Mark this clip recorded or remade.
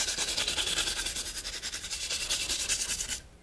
recorded